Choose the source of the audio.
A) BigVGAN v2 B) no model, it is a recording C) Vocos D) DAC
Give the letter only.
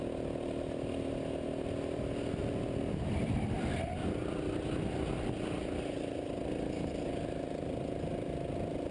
B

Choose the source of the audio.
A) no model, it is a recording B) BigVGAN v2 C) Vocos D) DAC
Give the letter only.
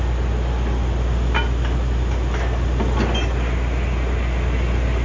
A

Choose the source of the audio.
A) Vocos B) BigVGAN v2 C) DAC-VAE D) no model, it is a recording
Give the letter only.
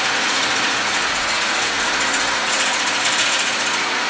A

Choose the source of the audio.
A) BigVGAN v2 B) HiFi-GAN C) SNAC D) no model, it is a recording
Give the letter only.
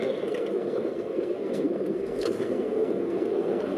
C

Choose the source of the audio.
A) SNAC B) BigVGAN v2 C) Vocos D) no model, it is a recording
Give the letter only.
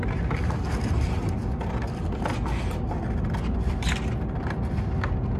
D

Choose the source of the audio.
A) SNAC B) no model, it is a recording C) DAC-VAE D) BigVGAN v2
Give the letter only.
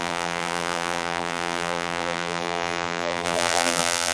D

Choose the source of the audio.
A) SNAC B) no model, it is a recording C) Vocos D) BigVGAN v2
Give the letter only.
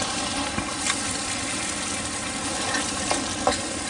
B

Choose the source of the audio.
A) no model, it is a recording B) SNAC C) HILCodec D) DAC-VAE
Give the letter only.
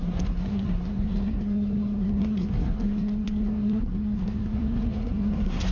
B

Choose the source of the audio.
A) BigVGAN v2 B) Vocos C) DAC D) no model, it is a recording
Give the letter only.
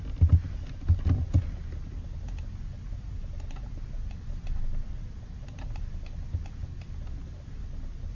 D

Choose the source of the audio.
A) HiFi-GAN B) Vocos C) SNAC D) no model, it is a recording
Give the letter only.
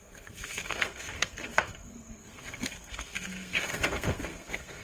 C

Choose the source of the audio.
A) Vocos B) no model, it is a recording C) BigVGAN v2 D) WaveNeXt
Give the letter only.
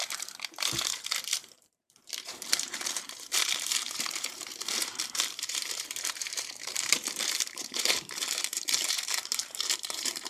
C